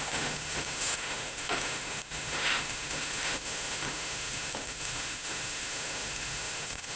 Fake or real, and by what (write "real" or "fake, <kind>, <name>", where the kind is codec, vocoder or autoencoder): fake, autoencoder, DAC-VAE